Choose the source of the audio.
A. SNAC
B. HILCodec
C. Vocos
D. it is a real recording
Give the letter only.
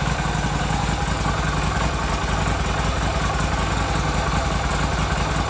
D